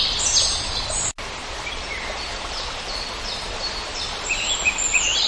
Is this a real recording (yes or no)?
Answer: yes